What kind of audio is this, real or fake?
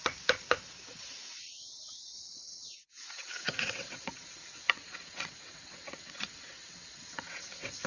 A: fake